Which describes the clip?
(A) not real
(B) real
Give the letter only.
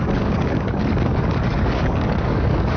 A